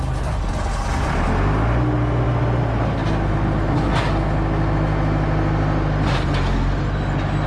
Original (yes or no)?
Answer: yes